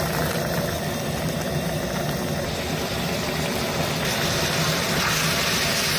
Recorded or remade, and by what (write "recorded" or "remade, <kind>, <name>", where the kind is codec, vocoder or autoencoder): recorded